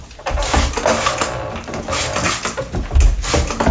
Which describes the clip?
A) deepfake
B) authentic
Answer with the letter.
B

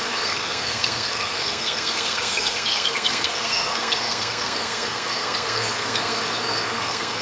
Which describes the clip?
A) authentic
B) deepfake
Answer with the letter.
B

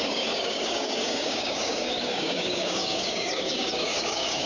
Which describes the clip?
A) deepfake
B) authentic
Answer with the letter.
A